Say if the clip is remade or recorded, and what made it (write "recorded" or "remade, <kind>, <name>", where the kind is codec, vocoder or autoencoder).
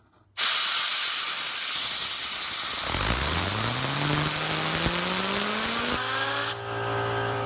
recorded